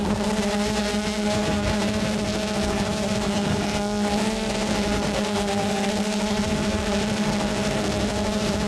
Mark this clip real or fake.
fake